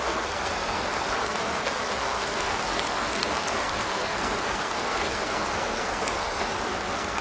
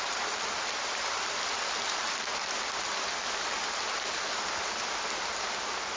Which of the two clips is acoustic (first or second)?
second